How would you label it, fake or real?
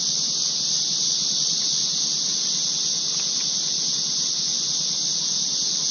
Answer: real